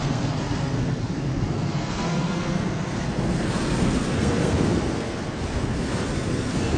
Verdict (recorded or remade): remade